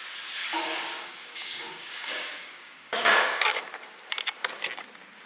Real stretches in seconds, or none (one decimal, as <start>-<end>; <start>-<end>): 0.0-0.4; 3.6-5.3